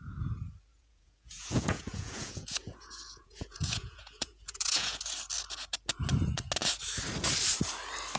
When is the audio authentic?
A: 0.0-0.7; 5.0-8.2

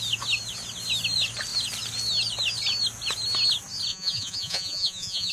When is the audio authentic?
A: 0.0-3.9

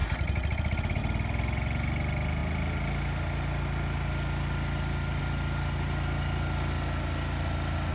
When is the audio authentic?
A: 0.0-7.9

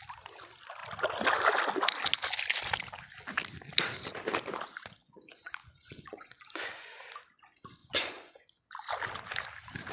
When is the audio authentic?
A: 0.0-5.0; 7.0-7.8; 8.6-9.9

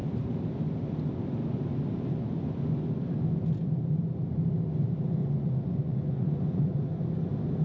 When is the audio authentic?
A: 0.0-5.2; 6.8-7.6

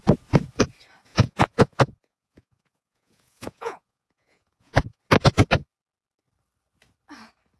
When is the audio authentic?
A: 0.0-1.1; 5.0-7.6